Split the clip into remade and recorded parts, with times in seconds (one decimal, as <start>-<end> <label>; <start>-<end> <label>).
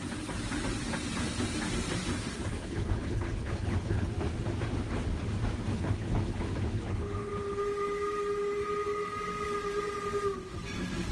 0.0-2.5 recorded; 2.5-4.1 remade; 4.1-5.7 recorded; 5.7-7.3 remade; 7.3-11.1 recorded